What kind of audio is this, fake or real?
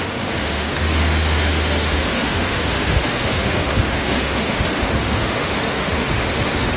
fake